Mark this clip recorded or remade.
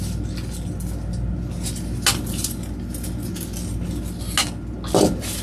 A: recorded